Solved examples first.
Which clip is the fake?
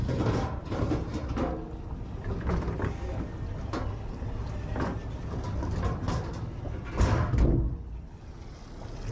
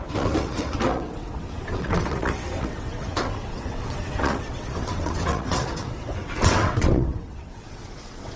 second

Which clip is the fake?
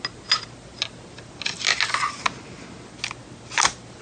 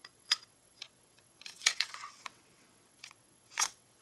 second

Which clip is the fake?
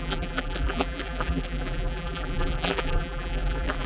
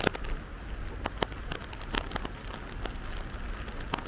first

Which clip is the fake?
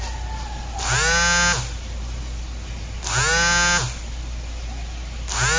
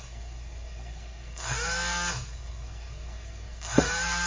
second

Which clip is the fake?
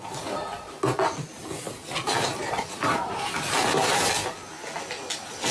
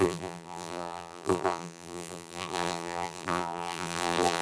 second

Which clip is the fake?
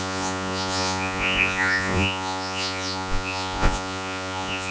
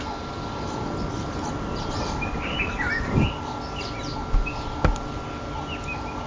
first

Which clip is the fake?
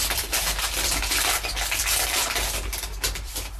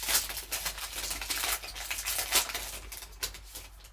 first